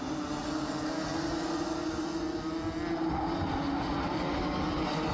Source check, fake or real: real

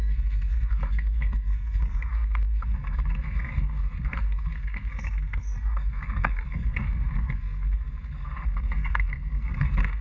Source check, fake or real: fake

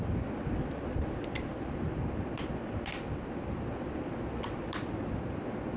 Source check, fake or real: real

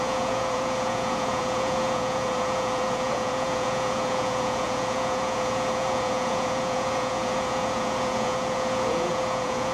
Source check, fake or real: fake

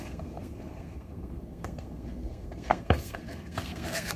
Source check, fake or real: fake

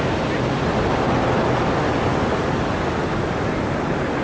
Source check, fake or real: real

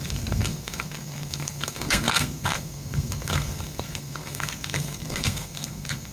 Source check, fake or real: fake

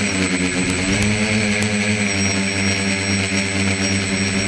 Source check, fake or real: real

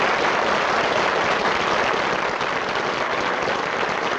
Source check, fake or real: real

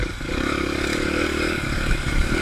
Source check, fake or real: fake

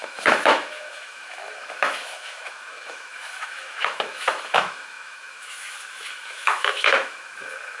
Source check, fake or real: fake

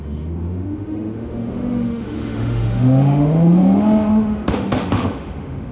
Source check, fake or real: fake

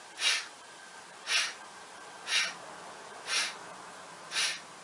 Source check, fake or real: real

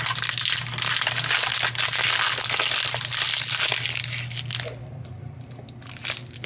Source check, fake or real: real